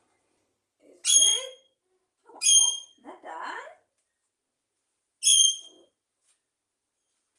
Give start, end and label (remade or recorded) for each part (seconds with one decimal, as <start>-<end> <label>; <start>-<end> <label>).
0.0-5.3 recorded; 5.3-5.9 remade; 5.9-7.4 recorded